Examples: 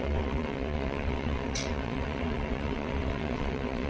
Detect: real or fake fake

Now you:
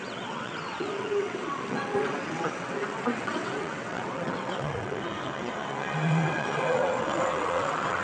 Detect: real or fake fake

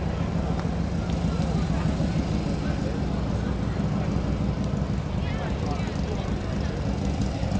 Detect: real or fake real